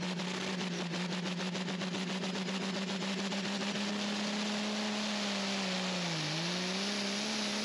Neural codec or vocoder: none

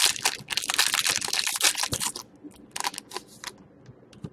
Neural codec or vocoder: none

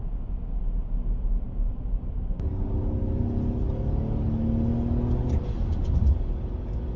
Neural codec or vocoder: none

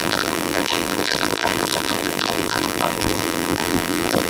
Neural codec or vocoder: vocoder, BigVGAN v2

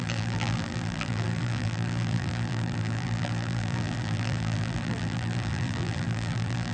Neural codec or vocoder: vocoder, BigVGAN v2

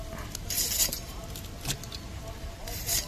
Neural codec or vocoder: none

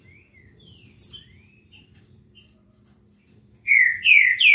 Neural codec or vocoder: vocoder, BigVGAN v2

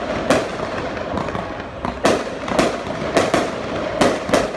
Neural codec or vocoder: none